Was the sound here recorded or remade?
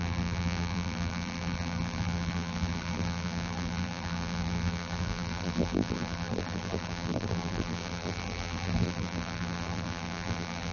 remade